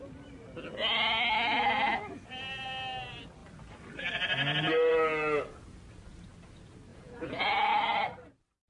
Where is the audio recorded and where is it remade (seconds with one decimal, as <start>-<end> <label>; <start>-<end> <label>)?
0.0-6.9 recorded; 6.9-7.7 remade; 7.7-8.7 recorded